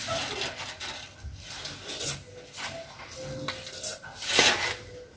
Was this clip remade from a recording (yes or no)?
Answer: no